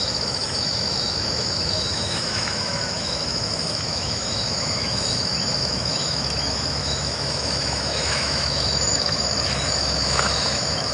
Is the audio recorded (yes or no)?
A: no